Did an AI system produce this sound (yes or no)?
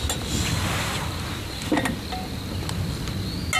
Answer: no